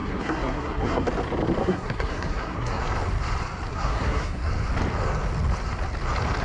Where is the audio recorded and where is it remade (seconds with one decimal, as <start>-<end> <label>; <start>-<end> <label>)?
0.0-1.1 remade; 1.1-1.6 recorded; 1.6-2.8 remade; 2.8-3.7 recorded; 3.7-4.5 remade; 4.5-6.4 recorded